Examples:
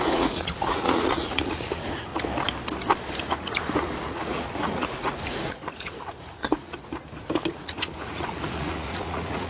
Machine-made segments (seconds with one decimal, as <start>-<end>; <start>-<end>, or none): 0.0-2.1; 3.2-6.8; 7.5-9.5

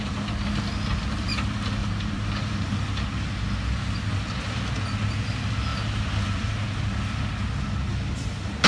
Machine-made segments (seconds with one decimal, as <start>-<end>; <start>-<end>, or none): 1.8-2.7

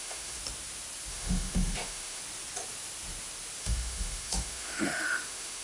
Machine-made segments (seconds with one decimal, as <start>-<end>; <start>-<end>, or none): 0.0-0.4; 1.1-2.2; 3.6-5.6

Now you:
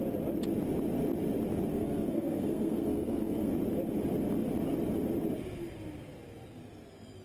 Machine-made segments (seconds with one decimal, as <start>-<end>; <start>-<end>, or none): 1.7-3.5

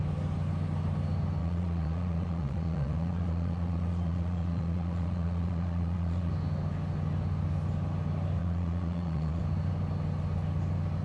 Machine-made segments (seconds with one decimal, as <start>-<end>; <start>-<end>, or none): 1.4-6.3; 8.4-9.4